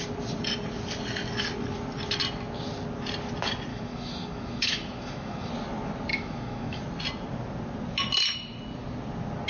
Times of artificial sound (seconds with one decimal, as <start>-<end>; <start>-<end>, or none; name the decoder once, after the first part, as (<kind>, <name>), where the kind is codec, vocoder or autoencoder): 3.7-5.5 (autoencoder, DAC-VAE); 6.1-6.8

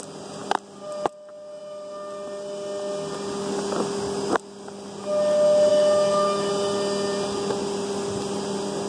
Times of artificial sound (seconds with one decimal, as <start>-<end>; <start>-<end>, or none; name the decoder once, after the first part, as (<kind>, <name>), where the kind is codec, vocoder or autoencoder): 5.7-6.5 (autoencoder, DAC-VAE)

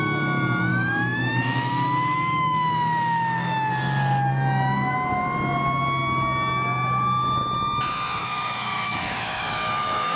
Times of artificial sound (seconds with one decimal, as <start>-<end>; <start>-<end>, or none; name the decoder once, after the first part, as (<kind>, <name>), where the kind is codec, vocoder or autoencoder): 0.7-3.7 (autoencoder, DAC-VAE); 8.2-10.2

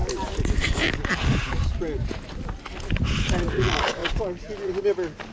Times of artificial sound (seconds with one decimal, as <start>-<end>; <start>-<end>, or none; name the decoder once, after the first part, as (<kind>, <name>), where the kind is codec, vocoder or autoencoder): none